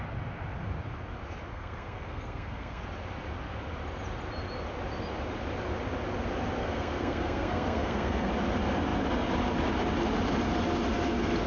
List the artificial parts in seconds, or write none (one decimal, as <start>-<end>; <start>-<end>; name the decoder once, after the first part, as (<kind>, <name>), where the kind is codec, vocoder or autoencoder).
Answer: 1.5-2.8 (codec, SNAC); 6.6-8.3